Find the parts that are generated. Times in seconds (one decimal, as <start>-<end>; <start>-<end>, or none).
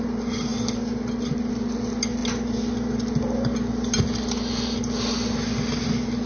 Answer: none